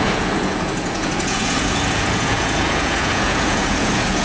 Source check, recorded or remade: remade